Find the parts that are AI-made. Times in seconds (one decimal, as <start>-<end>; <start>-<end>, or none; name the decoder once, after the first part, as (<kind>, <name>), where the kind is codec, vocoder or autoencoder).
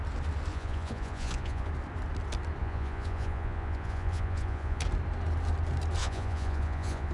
0.5-1.7 (vocoder, Vocos); 2.6-4.8; 6.0-7.1